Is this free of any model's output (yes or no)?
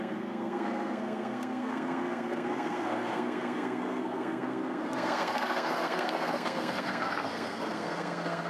no